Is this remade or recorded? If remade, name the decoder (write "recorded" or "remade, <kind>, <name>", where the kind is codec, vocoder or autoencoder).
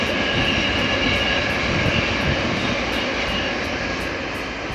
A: recorded